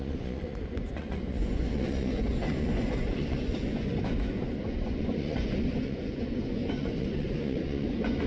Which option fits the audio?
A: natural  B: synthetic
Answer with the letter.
B